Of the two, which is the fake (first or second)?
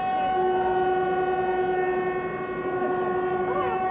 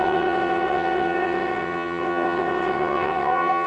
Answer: second